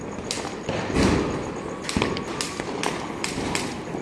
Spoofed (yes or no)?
no